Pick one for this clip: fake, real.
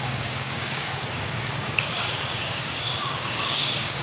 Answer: fake